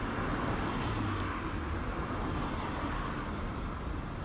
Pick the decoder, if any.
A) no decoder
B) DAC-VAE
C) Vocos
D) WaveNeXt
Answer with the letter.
A